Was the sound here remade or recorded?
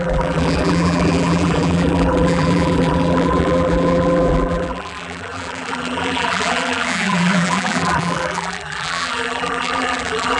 remade